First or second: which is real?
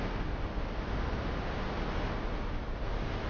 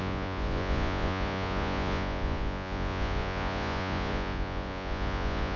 first